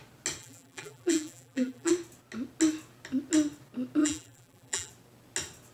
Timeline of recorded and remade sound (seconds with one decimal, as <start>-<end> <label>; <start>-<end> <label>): 0.0-0.4 recorded; 0.4-1.9 remade; 1.9-4.0 recorded; 4.0-4.9 remade; 4.9-5.7 recorded